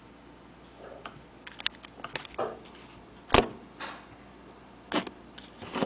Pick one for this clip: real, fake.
real